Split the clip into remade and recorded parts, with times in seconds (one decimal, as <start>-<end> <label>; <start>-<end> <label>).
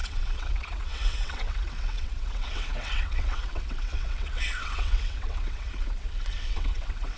0.0-7.2 remade